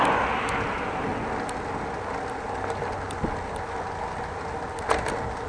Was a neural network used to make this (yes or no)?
no